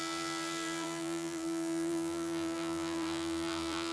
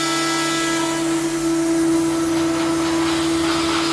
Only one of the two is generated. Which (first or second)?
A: first